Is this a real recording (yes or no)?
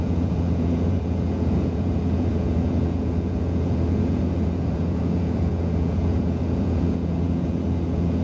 no